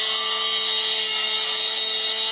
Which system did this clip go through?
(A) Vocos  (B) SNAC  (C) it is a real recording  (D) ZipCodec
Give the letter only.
C